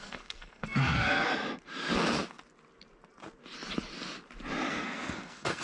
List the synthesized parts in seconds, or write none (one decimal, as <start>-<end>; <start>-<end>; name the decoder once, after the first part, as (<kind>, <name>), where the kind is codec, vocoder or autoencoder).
0.0-1.3 (codec, SNAC); 4.7-5.6